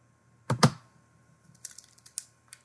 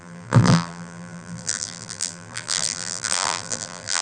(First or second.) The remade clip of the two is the second